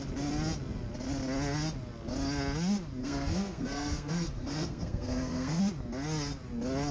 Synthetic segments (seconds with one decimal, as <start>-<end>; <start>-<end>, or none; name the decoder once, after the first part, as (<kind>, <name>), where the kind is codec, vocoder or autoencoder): 3.0-5.6 (codec, SNAC)